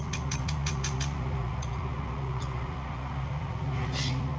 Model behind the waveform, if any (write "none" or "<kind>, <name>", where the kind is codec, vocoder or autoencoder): vocoder, Vocos